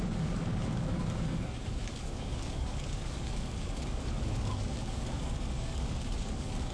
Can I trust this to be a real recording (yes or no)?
no